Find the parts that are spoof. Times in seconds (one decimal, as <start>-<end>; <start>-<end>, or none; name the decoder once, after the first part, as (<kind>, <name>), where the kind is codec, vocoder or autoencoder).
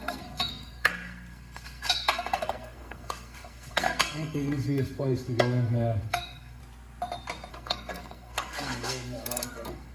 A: 0.0-6.6 (codec, SNAC); 7.5-9.9